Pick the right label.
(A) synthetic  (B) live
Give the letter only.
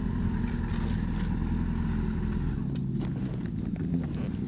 B